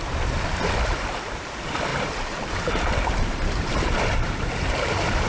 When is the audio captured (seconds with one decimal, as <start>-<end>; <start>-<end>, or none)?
0.0-1.9